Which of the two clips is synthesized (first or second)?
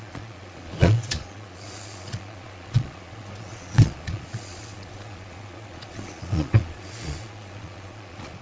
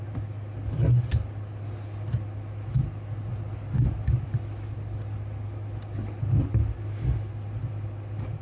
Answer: first